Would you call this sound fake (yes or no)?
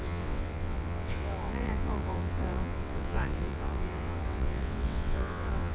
yes